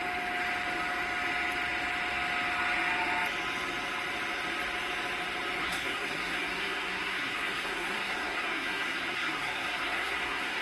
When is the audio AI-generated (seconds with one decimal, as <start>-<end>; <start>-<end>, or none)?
5.6-10.6